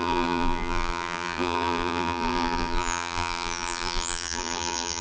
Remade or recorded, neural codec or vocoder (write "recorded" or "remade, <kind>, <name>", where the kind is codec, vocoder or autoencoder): remade, vocoder, BigVGAN v2